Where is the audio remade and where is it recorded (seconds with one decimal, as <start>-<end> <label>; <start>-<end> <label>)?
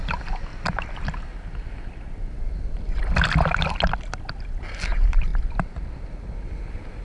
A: 0.0-7.0 recorded